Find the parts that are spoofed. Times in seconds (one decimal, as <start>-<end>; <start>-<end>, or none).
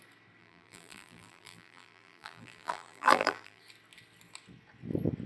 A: 0.4-3.6